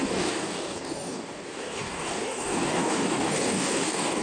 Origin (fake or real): fake